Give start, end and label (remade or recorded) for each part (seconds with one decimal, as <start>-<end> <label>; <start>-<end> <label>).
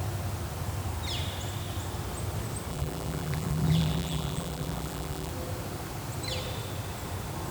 0.0-2.7 recorded; 2.7-5.3 remade; 5.3-7.5 recorded